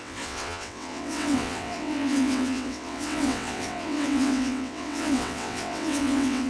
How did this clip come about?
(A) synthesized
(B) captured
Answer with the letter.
A